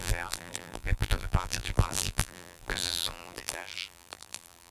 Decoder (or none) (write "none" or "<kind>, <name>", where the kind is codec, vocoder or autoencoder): vocoder, BigVGAN v2